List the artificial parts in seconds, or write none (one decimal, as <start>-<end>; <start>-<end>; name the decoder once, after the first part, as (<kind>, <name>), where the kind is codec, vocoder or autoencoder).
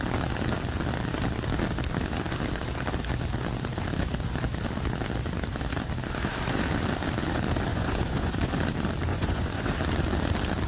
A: 7.7-8.5 (vocoder, Vocos); 9.1-9.7